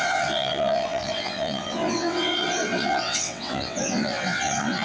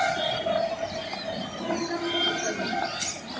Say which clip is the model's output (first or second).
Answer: first